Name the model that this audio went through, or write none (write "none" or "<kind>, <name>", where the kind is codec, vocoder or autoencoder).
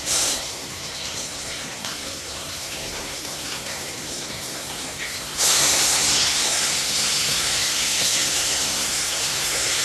codec, SNAC